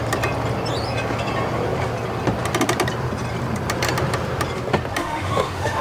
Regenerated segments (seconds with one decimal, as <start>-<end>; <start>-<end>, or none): 5.0-5.8